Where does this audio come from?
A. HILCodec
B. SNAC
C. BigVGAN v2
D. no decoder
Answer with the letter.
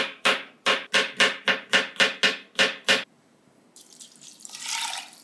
D